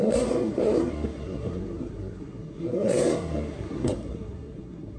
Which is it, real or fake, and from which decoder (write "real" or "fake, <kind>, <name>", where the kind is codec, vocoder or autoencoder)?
fake, codec, SNAC